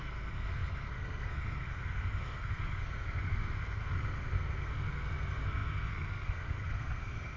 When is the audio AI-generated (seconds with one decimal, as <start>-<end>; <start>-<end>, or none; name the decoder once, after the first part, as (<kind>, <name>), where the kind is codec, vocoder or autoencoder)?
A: 0.0-7.4 (codec, SNAC)